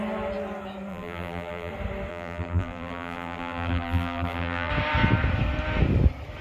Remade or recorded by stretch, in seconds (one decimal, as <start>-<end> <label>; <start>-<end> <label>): 0.0-0.9 recorded; 0.9-1.7 remade; 1.7-2.1 recorded; 2.1-4.7 remade; 4.7-6.4 recorded